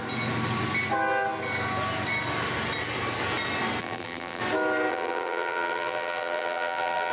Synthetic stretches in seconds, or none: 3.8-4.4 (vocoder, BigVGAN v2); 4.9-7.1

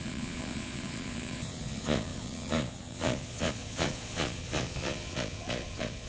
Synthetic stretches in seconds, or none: 0.0-6.1 (vocoder, Vocos)

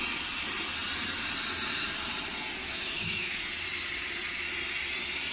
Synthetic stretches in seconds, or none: 2.6-3.4 (autoencoder, DAC-VAE)